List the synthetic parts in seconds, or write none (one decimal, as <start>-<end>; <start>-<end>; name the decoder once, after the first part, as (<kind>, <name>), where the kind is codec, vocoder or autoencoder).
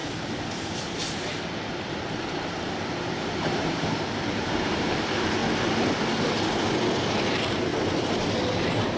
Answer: 0.6-1.0 (vocoder, BigVGAN v2); 1.7-5.4; 6.9-7.7; 8.5-9.0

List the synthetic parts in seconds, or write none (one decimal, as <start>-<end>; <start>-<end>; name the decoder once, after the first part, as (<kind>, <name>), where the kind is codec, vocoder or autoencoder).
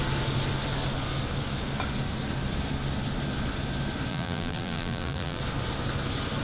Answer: 4.1-5.4 (vocoder, BigVGAN v2)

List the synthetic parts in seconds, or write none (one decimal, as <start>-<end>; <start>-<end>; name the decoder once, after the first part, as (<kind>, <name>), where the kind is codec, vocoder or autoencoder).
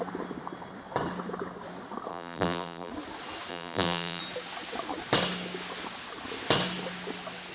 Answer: 2.1-2.9 (vocoder, BigVGAN v2); 3.5-4.2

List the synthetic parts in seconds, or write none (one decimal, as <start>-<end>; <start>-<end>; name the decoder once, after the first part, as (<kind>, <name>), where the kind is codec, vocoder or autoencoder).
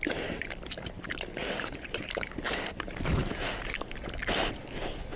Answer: 1.4-3.6 (vocoder, BigVGAN v2)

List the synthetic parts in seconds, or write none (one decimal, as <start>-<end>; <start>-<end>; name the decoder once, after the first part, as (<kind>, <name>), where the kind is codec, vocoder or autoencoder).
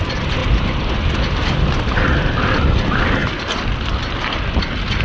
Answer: 0.4-1.6 (vocoder, BigVGAN v2); 3.2-4.4